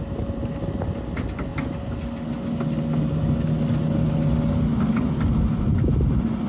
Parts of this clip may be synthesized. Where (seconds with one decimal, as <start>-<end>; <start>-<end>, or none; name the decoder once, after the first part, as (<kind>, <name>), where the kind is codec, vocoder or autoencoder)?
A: none